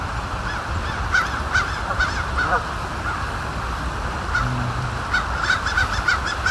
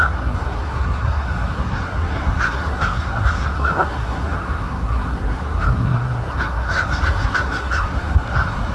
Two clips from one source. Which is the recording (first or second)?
first